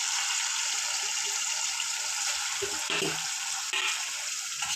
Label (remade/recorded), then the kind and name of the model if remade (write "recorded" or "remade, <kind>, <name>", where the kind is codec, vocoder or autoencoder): remade, vocoder, BigVGAN v2